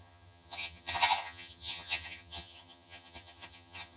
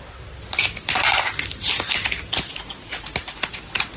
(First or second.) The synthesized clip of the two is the first